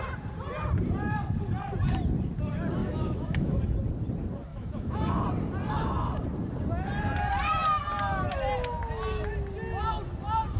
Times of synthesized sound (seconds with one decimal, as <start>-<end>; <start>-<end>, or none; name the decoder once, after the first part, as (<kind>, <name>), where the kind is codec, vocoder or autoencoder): 2.8-3.6 (autoencoder, DAC-VAE); 4.5-5.2